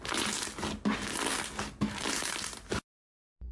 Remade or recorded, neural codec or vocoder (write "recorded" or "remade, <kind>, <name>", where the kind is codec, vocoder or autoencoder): recorded